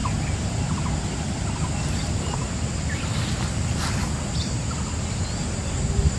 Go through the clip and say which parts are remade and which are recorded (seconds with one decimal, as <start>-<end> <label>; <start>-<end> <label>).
0.0-6.2 recorded